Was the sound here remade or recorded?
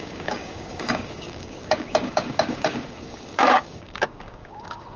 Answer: remade